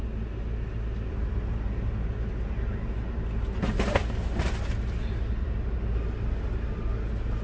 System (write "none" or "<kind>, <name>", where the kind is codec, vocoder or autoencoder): none